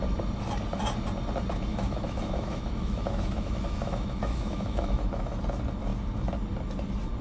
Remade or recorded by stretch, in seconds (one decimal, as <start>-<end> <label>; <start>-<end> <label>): 0.0-1.7 recorded; 1.7-5.4 remade; 5.4-7.2 recorded